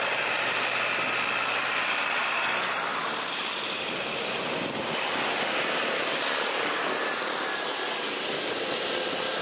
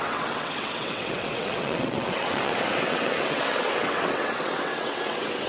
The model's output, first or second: second